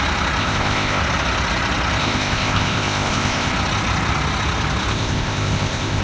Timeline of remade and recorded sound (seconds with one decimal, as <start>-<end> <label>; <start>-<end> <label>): 0.0-0.4 recorded; 0.4-1.0 remade; 1.0-2.0 recorded; 2.0-3.5 remade; 3.5-4.9 recorded; 4.9-6.0 remade